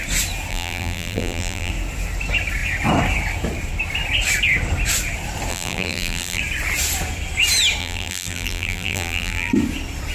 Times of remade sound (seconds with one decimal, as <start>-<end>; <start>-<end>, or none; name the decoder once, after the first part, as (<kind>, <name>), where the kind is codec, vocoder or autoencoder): 0.5-1.7 (vocoder, BigVGAN v2); 5.5-6.4; 7.8-9.5